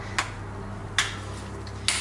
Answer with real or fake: real